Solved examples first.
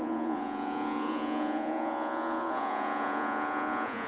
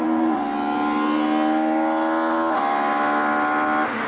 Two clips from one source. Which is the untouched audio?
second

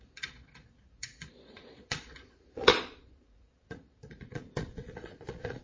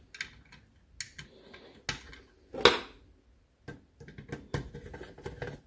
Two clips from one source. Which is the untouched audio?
second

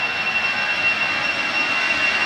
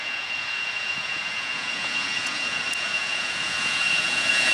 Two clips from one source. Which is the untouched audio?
first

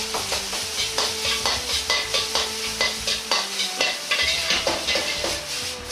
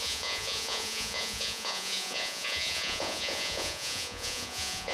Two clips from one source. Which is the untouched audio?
first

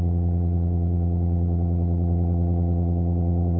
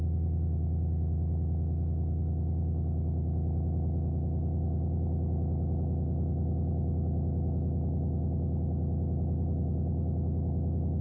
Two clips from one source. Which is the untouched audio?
second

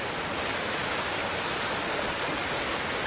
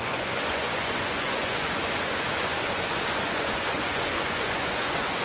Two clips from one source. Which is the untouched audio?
first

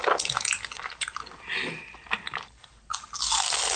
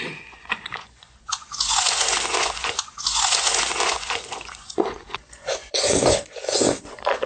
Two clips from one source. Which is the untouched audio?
first